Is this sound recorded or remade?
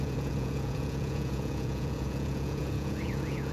remade